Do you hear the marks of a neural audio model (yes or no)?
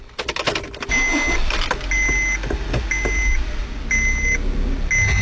no